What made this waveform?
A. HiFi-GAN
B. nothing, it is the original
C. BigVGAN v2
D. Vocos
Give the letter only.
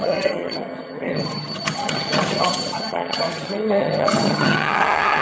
A